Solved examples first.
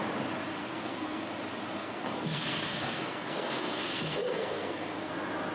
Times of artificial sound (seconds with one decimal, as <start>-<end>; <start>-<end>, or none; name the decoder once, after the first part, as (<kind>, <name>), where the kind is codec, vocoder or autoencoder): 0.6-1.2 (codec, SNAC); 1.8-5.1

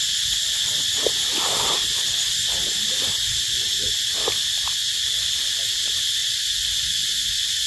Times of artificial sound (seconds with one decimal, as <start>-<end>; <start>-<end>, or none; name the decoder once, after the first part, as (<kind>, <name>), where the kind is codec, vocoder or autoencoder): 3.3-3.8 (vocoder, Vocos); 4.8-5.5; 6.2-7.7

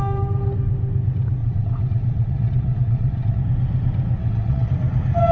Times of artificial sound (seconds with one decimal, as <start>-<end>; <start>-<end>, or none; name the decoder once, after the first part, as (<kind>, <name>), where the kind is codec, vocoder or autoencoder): 1.4-3.4 (vocoder, WaveNeXt); 4.2-4.7